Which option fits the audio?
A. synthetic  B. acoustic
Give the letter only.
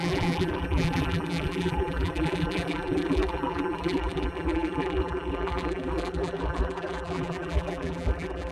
A